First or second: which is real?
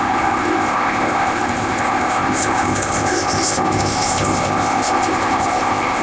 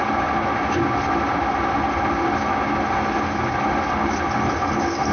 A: second